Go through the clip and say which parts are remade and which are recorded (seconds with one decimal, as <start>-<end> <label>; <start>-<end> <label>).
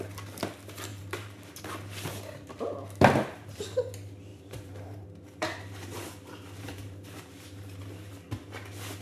0.0-0.9 recorded; 0.9-1.6 remade; 1.6-4.3 recorded; 4.3-7.8 remade; 7.8-9.0 recorded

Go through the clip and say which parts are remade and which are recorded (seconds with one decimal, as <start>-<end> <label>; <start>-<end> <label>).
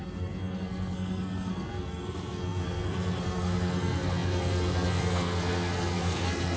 0.0-6.6 remade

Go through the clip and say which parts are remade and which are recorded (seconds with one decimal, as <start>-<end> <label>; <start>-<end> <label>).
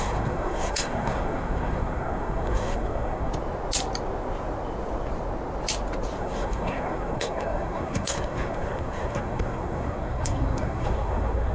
0.0-3.3 remade; 3.3-6.2 recorded; 6.2-11.5 remade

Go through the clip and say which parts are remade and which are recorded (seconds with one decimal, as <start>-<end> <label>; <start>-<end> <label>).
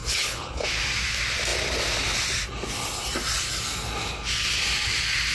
0.0-0.8 remade; 0.8-5.3 recorded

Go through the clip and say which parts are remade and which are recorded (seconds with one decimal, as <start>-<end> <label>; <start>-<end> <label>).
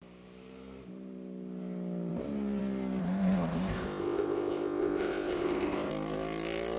0.0-3.0 recorded; 3.0-5.9 remade; 5.9-6.8 recorded